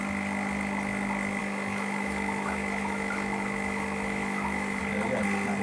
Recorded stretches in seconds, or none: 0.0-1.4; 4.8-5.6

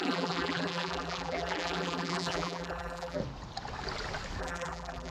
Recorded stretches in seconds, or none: 3.2-4.4

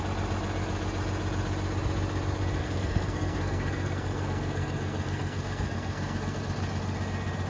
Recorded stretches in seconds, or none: 0.0-2.6; 6.4-7.5

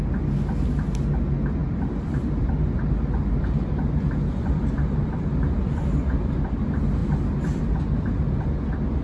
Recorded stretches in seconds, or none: 0.0-1.6; 6.6-7.0; 7.6-9.0

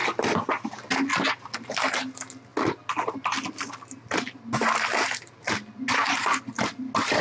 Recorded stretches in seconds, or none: 0.0-7.2

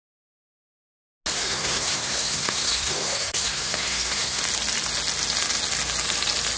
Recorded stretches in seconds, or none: 0.0-1.3; 4.4-6.6